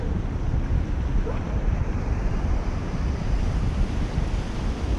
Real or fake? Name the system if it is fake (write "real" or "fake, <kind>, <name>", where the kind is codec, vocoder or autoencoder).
real